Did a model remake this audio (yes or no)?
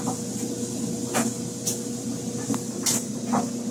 no